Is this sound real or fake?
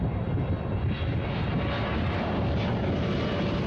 real